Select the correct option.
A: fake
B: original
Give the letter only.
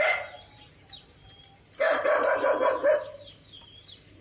A